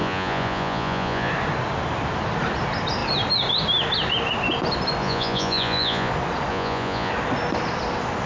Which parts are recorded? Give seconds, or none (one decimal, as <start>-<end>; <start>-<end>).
1.3-5.0; 6.1-6.5; 7.1-8.3